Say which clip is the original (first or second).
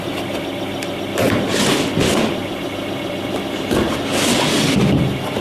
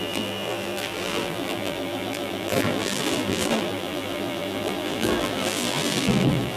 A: first